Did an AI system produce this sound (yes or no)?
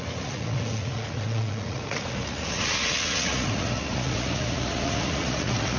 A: yes